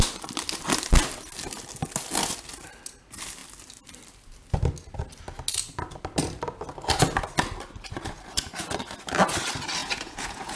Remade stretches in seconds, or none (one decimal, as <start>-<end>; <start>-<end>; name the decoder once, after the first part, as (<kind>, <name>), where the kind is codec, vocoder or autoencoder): 9.8-10.6 (vocoder, Vocos)